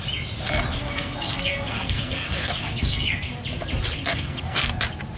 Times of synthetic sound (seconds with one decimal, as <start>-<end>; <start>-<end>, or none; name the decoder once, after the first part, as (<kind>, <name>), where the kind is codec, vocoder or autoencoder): 0.7-3.3 (codec, SNAC); 4.1-4.8